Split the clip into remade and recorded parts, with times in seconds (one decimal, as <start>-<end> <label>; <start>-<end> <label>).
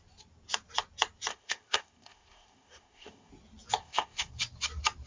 0.0-1.3 recorded; 1.3-3.3 remade; 3.3-3.8 recorded; 3.8-4.3 remade; 4.3-5.1 recorded